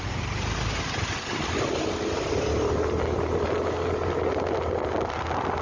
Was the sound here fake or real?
real